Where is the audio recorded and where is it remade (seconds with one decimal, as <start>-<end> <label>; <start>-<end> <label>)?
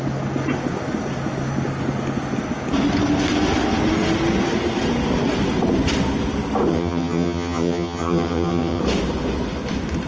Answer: 0.0-6.7 recorded; 6.7-8.8 remade; 8.8-10.1 recorded